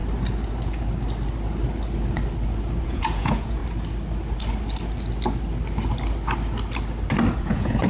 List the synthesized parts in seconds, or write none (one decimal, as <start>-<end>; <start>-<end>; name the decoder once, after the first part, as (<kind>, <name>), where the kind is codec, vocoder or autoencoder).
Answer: 2.8-3.6 (vocoder, Vocos); 7.4-7.9